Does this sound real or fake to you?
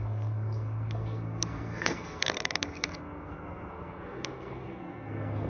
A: fake